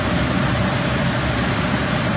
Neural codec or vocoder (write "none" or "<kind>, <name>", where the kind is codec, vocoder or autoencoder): none